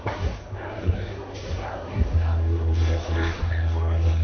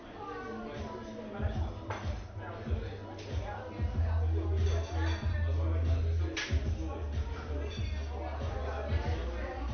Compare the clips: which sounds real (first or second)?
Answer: second